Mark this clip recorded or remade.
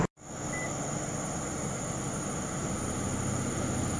recorded